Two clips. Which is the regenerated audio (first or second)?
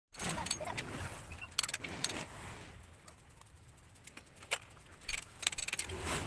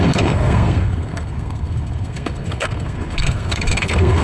second